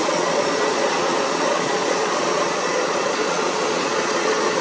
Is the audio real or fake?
fake